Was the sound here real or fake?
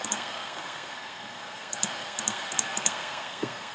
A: fake